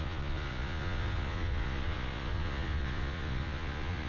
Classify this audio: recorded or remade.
remade